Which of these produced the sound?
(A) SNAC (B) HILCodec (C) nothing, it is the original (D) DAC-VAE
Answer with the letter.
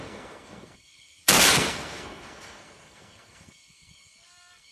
A